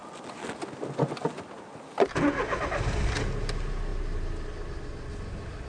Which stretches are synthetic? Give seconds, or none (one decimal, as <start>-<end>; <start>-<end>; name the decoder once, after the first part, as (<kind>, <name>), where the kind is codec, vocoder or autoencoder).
none